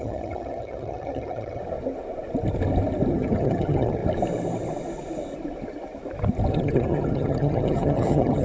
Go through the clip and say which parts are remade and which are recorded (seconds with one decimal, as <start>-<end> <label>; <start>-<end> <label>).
0.0-1.6 remade; 1.6-3.1 recorded; 3.1-4.0 remade; 4.0-6.5 recorded; 6.5-8.4 remade